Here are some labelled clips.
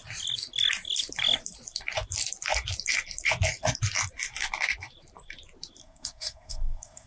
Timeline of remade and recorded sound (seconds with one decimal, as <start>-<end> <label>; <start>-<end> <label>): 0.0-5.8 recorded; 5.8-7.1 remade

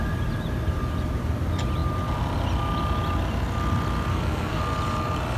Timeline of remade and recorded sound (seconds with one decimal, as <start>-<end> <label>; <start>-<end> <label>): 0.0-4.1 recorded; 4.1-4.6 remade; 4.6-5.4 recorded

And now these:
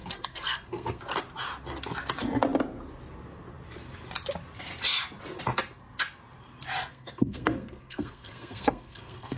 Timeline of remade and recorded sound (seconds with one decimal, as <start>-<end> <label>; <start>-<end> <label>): 0.0-1.0 remade; 1.0-6.9 recorded; 6.9-9.4 remade

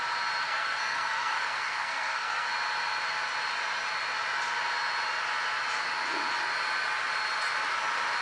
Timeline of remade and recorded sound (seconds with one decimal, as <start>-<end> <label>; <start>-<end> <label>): 0.0-0.4 recorded; 0.4-2.5 remade; 2.5-8.2 recorded

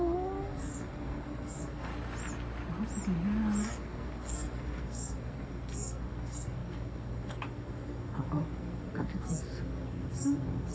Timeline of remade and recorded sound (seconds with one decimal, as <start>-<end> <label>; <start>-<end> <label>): 0.0-1.9 remade; 1.9-3.6 recorded; 3.6-10.7 remade

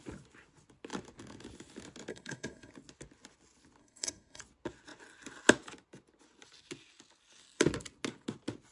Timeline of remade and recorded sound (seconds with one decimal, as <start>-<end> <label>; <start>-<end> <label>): 0.0-2.1 recorded; 2.1-2.7 remade; 2.7-3.8 recorded; 3.8-4.4 remade; 4.4-8.7 recorded

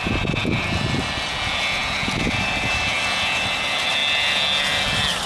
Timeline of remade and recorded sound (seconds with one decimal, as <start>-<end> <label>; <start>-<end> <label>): 0.0-5.3 recorded